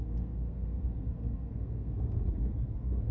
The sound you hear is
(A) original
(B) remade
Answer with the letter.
B